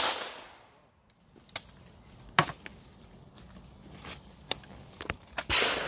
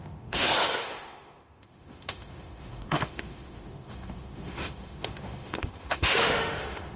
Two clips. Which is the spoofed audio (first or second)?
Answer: second